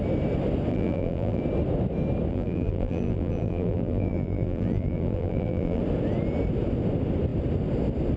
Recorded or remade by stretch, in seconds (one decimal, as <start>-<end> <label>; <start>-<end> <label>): 0.0-0.7 recorded; 0.7-1.4 remade; 1.4-2.3 recorded; 2.3-5.8 remade; 5.8-8.2 recorded